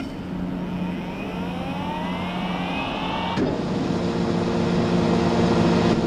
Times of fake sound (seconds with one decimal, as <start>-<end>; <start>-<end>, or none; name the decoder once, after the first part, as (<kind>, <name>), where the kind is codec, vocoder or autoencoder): none